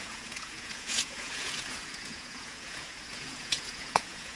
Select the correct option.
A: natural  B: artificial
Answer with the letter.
B